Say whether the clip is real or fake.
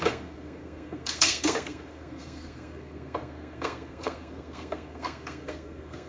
fake